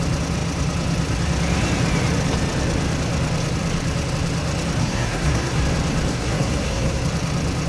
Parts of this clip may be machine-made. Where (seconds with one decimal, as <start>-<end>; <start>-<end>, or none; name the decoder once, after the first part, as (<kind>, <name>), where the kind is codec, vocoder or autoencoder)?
4.8-5.6 (codec, SNAC); 6.1-7.0